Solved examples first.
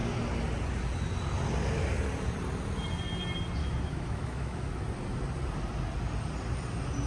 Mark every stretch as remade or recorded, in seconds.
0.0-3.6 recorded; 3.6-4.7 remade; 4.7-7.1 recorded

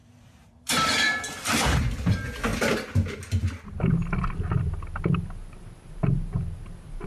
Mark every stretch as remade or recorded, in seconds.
0.0-1.8 remade; 1.8-7.1 recorded

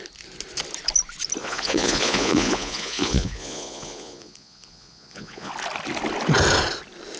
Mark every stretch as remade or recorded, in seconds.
0.0-1.4 recorded; 1.4-5.5 remade; 5.5-7.2 recorded